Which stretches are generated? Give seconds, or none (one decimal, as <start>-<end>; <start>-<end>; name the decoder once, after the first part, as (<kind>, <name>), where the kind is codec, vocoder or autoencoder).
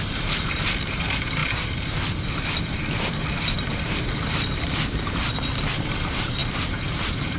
0.0-1.4 (vocoder, BigVGAN v2); 3.1-7.4